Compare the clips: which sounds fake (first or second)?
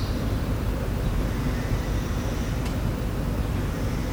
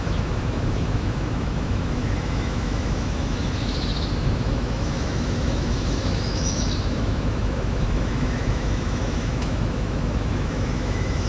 second